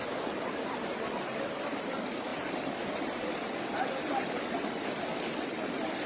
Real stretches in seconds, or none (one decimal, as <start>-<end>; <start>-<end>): 0.0-6.1